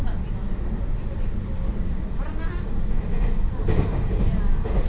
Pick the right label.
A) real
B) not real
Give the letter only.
A